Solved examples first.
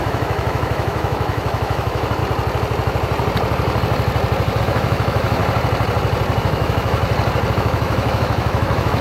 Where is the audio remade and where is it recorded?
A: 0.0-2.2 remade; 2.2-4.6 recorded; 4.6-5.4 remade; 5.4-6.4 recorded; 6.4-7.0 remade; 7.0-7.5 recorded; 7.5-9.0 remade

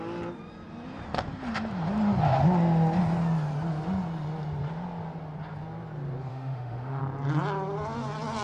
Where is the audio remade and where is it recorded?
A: 0.0-6.3 recorded; 6.3-7.0 remade; 7.0-8.4 recorded

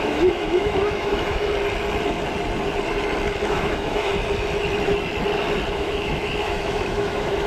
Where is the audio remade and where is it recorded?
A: 0.0-1.5 remade; 1.5-3.5 recorded; 3.5-4.1 remade; 4.1-5.7 recorded; 5.7-7.5 remade

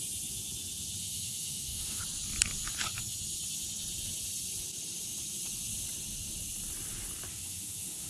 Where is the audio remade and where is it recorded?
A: 0.0-1.0 recorded; 1.0-2.0 remade; 2.0-7.3 recorded; 7.3-8.1 remade

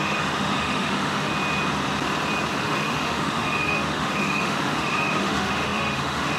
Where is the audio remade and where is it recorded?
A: 0.0-1.3 remade; 1.3-2.6 recorded; 2.6-6.4 remade

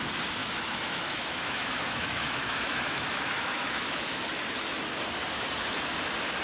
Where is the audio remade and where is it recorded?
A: 0.0-0.4 recorded; 0.4-4.2 remade; 4.2-6.4 recorded

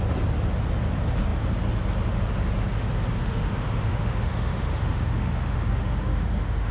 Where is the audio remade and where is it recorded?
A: 0.0-3.2 recorded; 3.2-6.7 remade